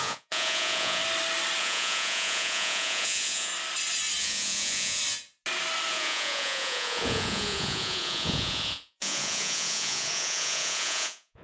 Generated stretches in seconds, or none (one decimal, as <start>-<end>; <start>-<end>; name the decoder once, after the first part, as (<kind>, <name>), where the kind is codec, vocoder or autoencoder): 0.0-1.0 (vocoder, Vocos); 1.6-3.5; 4.2-5.0; 5.9-11.4

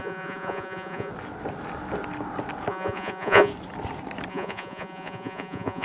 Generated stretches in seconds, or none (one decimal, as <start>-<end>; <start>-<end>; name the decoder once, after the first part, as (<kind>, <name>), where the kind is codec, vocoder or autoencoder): 0.0-1.1 (vocoder, Vocos); 2.7-3.5; 4.3-5.8

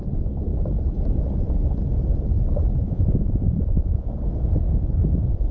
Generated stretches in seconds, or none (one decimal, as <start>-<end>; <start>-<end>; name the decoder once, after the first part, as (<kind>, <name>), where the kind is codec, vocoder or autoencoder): 2.8-4.1 (vocoder, Vocos)

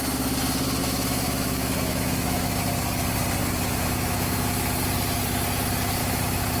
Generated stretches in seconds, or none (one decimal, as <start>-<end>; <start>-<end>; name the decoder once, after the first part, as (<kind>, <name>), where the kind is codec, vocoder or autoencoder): 0.8-2.6 (autoencoder, DAC-VAE); 3.4-4.8; 6.0-6.6

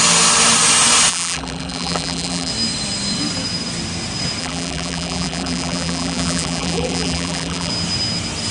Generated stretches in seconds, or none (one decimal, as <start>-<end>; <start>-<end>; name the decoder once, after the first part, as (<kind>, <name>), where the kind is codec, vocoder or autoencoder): 1.1-2.5 (vocoder, BigVGAN v2); 4.4-7.7